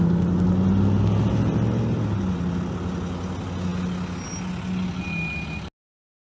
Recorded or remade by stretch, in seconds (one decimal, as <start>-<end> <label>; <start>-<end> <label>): 0.0-6.2 recorded